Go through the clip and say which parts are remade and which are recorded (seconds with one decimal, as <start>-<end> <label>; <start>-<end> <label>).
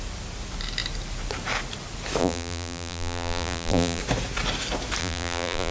0.0-2.2 recorded; 2.2-4.0 remade; 4.0-5.0 recorded; 5.0-5.7 remade